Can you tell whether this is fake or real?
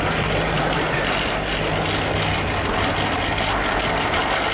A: real